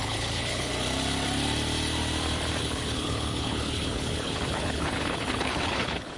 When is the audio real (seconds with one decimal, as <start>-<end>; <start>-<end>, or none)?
0.7-2.6